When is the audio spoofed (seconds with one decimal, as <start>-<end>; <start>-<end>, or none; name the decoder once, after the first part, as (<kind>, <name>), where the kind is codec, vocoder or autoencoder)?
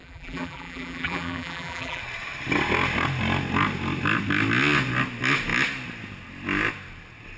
0.0-2.0 (vocoder, BigVGAN v2)